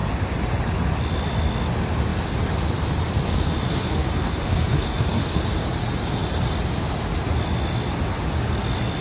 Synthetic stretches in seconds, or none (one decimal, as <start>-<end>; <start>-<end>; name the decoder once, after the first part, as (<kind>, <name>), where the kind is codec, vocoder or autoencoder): 3.7-5.4 (codec, SNAC)

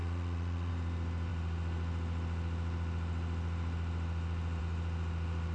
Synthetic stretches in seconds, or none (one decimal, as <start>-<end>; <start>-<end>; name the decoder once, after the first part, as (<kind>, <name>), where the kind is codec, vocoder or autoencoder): 0.0-0.7 (vocoder, Vocos)